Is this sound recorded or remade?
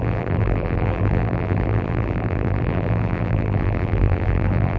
remade